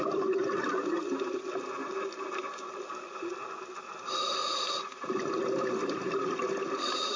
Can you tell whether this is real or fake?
real